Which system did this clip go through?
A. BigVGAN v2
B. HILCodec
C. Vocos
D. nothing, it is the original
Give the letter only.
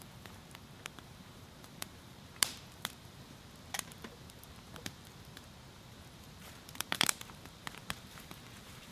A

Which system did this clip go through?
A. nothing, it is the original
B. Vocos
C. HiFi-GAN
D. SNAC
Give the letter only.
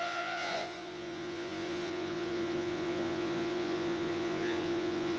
B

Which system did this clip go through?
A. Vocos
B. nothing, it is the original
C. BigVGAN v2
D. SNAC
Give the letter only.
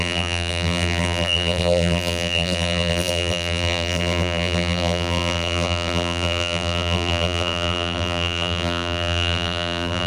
C